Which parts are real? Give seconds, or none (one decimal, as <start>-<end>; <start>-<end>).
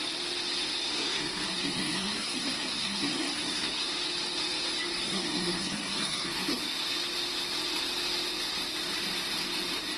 0.0-0.7; 3.9-4.9; 6.6-10.0